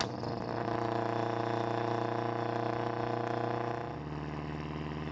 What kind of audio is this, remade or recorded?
recorded